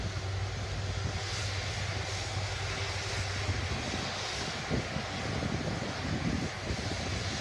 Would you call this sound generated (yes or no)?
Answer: no